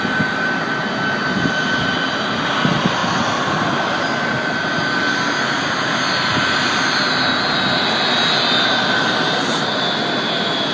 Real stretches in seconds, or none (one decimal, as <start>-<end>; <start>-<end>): 0.0-10.7